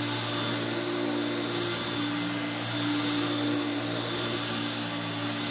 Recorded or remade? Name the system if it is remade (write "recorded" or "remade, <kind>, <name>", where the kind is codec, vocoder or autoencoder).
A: recorded